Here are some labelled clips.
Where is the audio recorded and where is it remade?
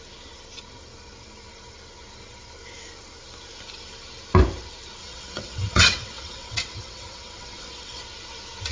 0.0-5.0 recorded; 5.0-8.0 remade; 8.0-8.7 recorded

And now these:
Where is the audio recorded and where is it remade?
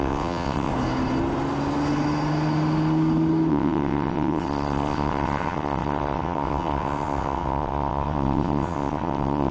0.0-0.7 remade; 0.7-3.5 recorded; 3.5-9.5 remade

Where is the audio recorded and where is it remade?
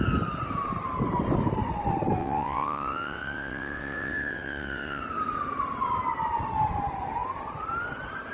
0.0-2.2 recorded; 2.2-5.0 remade; 5.0-8.3 recorded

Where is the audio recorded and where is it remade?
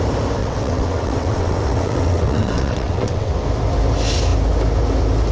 0.0-0.4 recorded; 0.4-3.3 remade; 3.3-5.3 recorded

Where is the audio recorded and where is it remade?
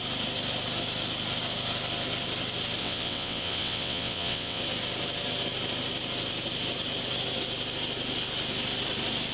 0.0-2.8 recorded; 2.8-4.6 remade; 4.6-9.3 recorded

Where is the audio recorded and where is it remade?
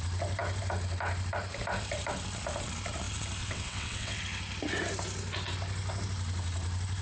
0.0-3.4 recorded; 3.4-4.2 remade; 4.2-7.0 recorded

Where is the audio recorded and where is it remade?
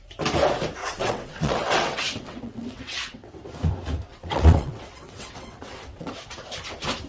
0.0-0.8 recorded; 0.8-3.3 remade; 3.3-4.1 recorded; 4.1-6.1 remade; 6.1-7.1 recorded